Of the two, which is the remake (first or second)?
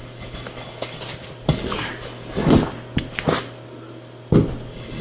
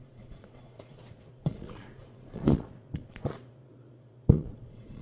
second